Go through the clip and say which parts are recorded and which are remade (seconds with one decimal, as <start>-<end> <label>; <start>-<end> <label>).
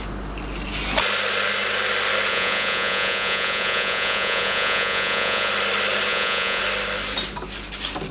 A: 0.0-2.3 recorded; 2.3-5.5 remade; 5.5-6.1 recorded; 6.1-6.6 remade; 6.6-8.1 recorded